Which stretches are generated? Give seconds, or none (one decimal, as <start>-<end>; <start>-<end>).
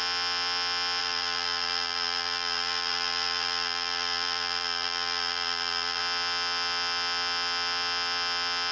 1.0-6.0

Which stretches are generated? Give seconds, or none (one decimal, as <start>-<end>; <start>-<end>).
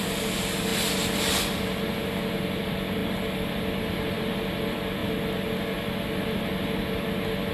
0.0-5.0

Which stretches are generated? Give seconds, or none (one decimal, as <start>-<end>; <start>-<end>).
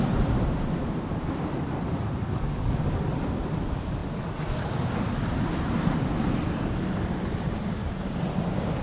0.0-4.0; 5.0-8.8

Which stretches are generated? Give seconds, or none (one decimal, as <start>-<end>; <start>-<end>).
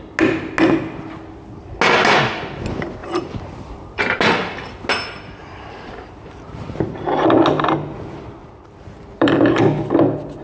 3.0-4.0; 5.4-7.4; 8.4-9.6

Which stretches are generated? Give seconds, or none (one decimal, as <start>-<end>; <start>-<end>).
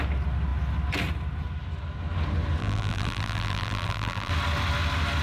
2.6-4.3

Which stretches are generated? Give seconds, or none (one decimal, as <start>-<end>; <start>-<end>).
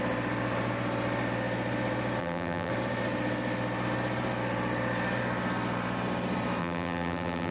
2.2-2.7; 6.6-7.5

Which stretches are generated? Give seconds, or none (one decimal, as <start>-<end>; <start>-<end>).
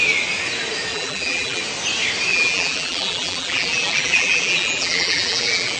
0.9-1.6; 2.3-5.8